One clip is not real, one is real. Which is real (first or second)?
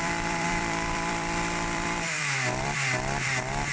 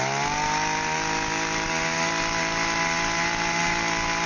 second